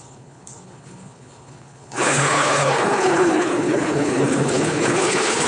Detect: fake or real fake